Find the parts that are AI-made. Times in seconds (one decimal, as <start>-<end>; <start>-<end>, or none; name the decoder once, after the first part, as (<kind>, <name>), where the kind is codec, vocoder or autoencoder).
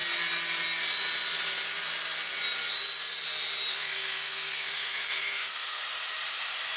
3.7-5.8 (codec, SNAC)